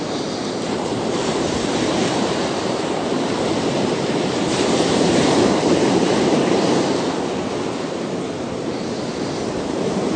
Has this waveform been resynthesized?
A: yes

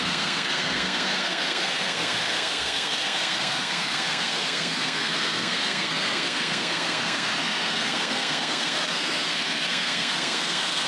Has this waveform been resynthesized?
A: yes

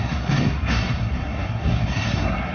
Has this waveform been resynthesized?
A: yes